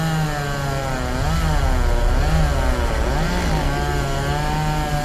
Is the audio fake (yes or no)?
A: no